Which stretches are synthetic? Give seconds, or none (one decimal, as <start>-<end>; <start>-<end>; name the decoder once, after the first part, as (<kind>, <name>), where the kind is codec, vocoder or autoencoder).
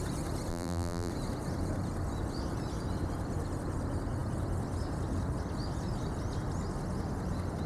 0.5-1.1 (vocoder, BigVGAN v2)